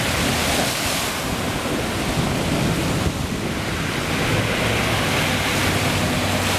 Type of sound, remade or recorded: recorded